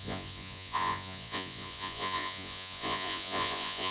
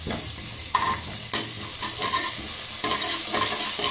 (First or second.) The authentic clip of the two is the second